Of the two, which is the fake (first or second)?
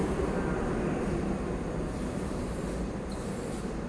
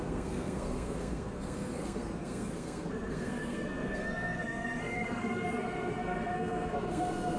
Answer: second